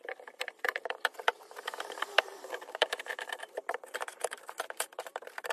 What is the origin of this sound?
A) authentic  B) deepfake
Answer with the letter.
B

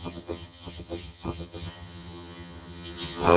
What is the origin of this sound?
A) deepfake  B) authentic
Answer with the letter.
A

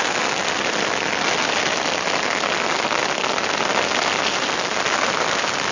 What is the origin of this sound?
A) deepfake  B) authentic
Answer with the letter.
B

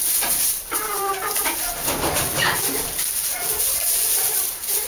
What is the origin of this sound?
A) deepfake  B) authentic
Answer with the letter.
A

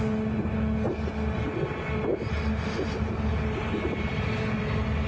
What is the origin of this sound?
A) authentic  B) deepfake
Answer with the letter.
A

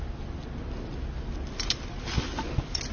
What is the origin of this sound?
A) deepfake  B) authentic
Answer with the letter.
B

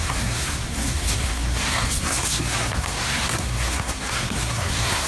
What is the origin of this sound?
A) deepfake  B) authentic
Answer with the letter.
A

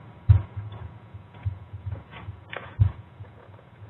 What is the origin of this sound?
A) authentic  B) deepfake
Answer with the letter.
B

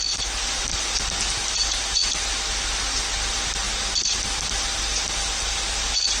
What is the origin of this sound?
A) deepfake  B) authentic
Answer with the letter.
B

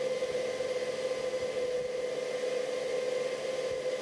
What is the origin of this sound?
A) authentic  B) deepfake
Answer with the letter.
A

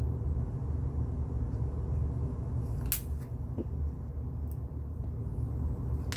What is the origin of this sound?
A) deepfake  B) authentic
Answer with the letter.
B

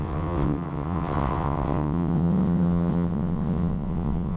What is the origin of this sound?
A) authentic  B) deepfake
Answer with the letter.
B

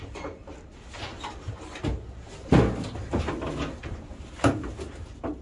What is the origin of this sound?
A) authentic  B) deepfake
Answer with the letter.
A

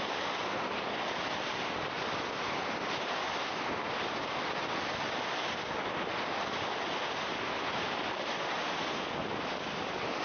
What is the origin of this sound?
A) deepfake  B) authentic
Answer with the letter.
B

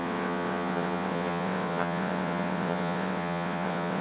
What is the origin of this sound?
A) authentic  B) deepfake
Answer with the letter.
B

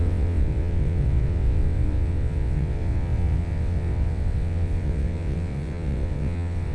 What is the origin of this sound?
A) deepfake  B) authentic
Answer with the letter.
A